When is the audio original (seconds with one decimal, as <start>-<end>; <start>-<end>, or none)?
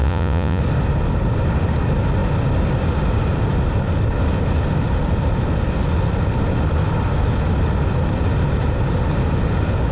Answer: 0.6-9.9